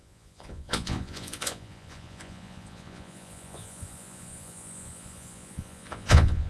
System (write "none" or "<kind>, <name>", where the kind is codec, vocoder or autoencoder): vocoder, Vocos